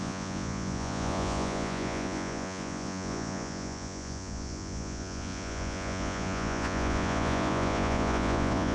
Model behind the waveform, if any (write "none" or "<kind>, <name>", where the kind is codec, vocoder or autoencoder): vocoder, Vocos